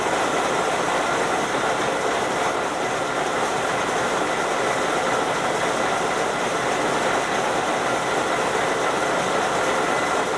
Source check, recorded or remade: recorded